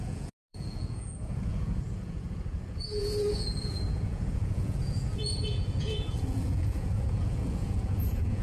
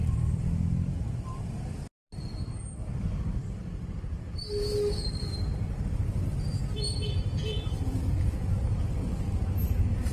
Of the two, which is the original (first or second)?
second